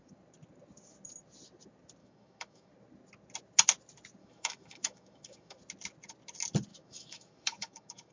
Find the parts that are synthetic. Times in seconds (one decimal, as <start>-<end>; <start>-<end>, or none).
2.0-2.7; 4.2-5.6; 6.7-8.1